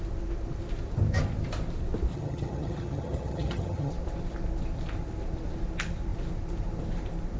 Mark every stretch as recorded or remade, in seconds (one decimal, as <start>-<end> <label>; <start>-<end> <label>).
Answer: 0.0-2.1 recorded; 2.1-3.9 remade; 3.9-7.4 recorded